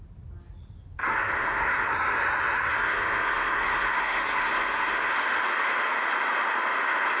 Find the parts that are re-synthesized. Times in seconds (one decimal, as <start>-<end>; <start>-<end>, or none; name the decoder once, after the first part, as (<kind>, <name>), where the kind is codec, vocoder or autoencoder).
1.0-5.1 (codec, SNAC)